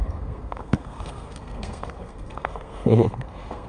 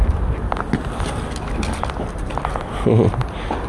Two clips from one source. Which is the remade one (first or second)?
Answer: first